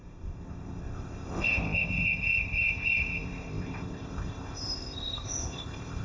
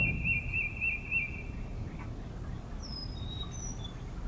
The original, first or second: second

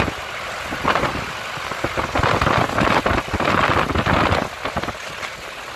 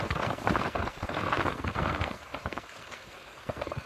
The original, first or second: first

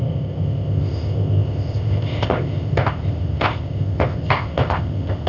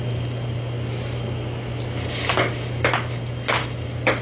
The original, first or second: second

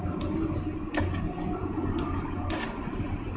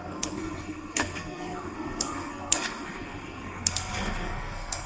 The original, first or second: first